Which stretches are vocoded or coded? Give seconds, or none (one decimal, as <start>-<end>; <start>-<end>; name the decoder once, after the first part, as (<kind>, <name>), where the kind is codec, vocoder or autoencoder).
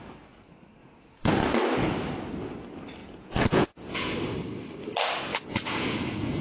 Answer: 0.8-1.3 (vocoder, Vocos); 3.0-4.1; 5.3-6.4